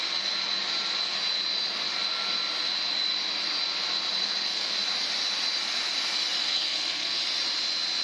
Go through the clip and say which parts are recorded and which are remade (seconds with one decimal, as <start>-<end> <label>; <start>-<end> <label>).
0.0-4.2 recorded; 4.2-4.7 remade; 4.7-6.4 recorded; 6.4-7.2 remade; 7.2-8.0 recorded